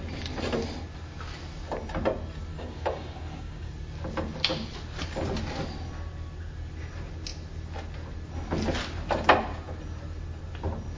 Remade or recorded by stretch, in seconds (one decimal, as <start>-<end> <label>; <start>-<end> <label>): 0.0-2.5 recorded; 2.5-3.7 remade; 3.7-11.0 recorded